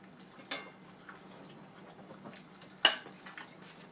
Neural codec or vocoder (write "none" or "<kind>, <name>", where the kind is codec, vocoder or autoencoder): none